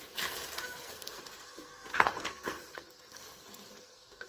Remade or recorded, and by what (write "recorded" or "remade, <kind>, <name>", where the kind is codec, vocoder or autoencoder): remade, codec, SNAC